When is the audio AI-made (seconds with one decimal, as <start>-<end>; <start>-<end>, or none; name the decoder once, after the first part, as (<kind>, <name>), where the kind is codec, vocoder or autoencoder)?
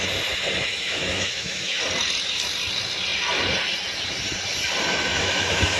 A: 0.7-1.8 (autoencoder, DAC-VAE); 5.1-5.8